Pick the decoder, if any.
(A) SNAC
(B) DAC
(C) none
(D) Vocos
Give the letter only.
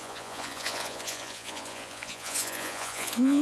D